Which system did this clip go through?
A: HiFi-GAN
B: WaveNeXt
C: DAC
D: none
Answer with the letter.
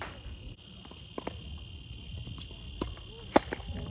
D